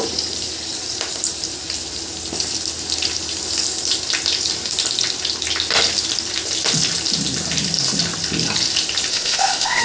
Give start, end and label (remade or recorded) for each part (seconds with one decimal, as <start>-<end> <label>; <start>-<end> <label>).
0.0-9.1 recorded; 9.1-9.8 remade